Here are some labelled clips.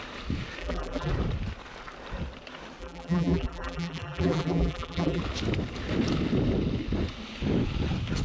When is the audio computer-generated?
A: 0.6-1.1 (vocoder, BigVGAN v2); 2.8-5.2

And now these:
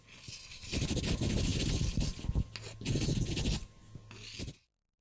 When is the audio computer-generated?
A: none